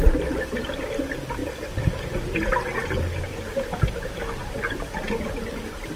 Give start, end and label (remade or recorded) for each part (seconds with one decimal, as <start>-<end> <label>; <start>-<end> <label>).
0.0-6.0 recorded